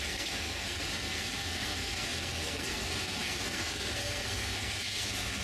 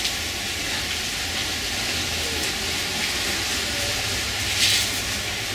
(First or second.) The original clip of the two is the second